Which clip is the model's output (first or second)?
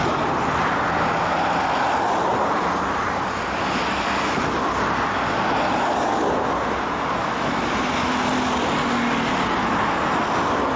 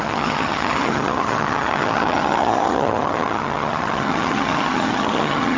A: second